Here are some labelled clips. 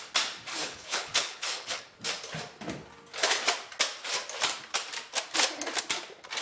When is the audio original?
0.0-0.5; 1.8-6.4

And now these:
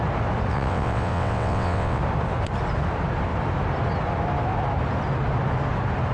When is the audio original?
0.0-0.5; 2.0-6.1

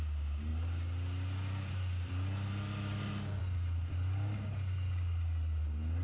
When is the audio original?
0.0-6.0